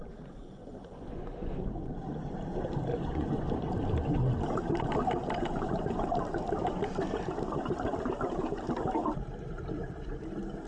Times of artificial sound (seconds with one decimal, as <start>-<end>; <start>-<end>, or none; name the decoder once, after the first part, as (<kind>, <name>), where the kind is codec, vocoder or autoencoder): 0.6-1.7 (vocoder, Vocos); 2.9-3.7